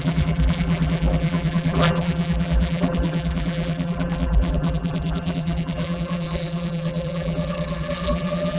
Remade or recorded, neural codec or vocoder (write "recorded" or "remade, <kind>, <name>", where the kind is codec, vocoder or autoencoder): remade, vocoder, BigVGAN v2